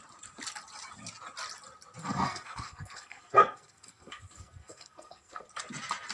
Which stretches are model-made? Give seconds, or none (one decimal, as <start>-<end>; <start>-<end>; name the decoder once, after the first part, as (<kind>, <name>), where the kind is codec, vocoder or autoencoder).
2.0-5.5 (codec, SNAC)